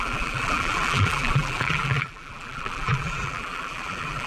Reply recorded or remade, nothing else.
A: remade